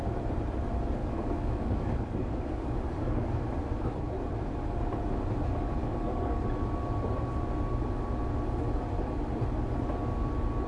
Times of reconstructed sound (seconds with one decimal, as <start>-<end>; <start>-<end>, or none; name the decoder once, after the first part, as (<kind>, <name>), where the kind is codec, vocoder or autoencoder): 1.0-3.4 (codec, DAC); 5.8-6.4